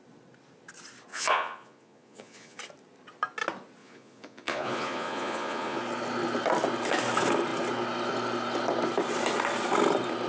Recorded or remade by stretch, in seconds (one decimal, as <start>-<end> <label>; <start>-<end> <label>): 0.0-1.1 recorded; 1.1-2.6 remade; 2.6-3.8 recorded; 3.8-5.8 remade; 5.8-10.3 recorded